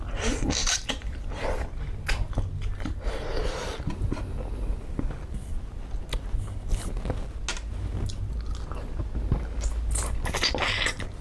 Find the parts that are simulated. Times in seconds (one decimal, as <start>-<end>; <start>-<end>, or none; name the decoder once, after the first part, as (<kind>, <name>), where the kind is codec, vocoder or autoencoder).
0.6-1.3 (vocoder, BigVGAN v2); 3.4-4.1